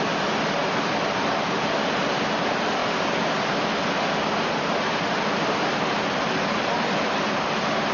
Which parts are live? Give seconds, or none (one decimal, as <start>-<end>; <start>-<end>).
0.0-7.9